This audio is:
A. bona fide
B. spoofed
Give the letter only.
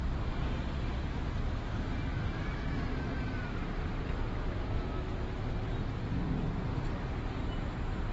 A